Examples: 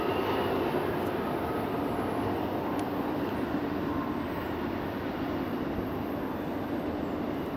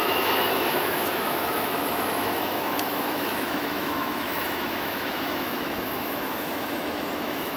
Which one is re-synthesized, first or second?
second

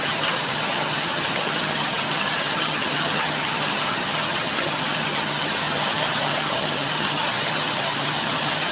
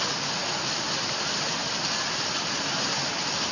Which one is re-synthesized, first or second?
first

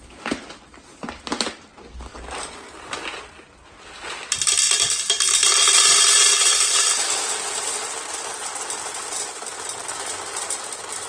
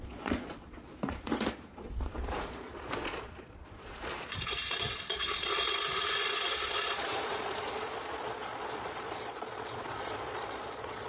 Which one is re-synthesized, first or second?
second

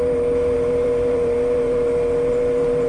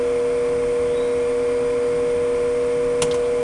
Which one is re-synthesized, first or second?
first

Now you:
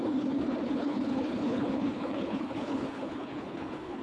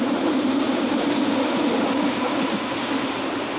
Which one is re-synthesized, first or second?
first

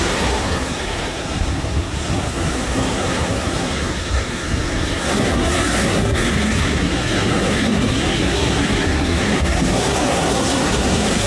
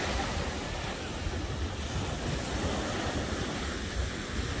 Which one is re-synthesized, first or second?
first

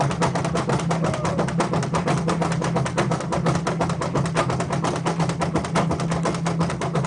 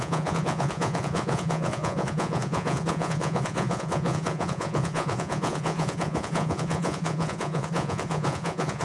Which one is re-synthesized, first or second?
second